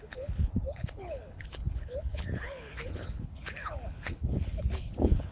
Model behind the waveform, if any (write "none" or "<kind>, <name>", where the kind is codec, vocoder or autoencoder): codec, HILCodec